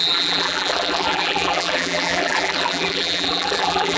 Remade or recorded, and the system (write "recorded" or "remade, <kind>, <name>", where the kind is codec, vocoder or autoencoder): remade, vocoder, BigVGAN v2